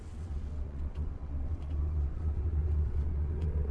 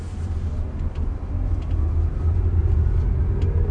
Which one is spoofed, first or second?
first